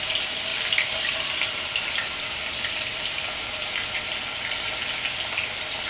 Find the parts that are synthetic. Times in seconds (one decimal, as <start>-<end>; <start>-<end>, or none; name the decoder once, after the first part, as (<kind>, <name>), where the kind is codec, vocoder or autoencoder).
none

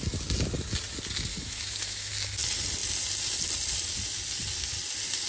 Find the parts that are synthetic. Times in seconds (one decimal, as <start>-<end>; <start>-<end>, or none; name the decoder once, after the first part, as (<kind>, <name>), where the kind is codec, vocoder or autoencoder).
1.3-2.1 (autoencoder, DAC-VAE)

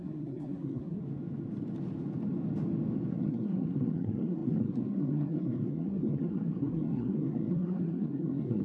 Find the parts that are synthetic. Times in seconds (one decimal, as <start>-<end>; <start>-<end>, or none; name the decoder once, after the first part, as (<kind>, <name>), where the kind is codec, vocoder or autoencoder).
0.0-1.0 (codec, SNAC); 3.1-8.6

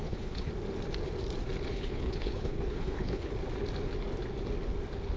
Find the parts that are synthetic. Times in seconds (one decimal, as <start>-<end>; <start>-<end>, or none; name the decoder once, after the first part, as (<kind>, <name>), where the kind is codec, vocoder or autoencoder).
0.0-0.5 (codec, HILCodec); 1.7-3.3

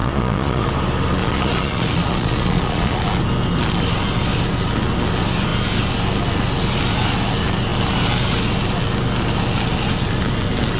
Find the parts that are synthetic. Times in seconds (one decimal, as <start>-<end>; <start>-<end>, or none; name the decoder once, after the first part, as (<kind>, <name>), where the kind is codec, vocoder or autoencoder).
0.0-0.7 (vocoder, Vocos); 1.2-3.0